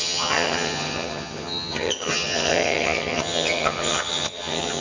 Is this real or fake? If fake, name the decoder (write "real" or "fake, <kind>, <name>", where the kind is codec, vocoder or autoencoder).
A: fake, vocoder, HiFi-GAN